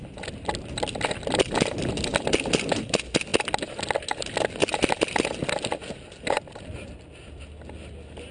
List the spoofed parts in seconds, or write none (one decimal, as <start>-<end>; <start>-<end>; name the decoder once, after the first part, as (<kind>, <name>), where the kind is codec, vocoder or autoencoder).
none